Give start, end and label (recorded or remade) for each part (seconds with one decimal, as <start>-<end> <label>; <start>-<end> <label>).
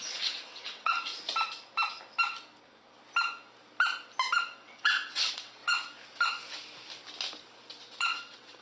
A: 0.0-1.1 remade; 1.1-4.4 recorded; 4.4-5.6 remade; 5.6-8.0 recorded; 8.0-8.6 remade